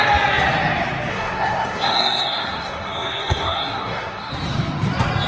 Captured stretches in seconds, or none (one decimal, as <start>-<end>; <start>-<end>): 0.0-1.1; 4.3-5.3